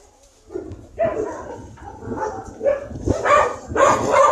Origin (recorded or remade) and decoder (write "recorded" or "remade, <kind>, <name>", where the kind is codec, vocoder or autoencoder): recorded